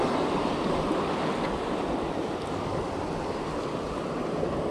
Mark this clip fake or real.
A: real